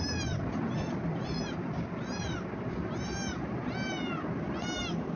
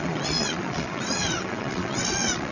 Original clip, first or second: first